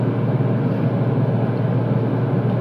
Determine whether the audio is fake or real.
real